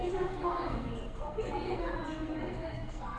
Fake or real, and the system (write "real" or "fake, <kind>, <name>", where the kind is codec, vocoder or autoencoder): fake, codec, SNAC